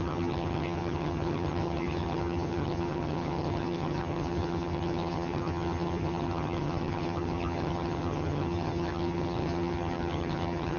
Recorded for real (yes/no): no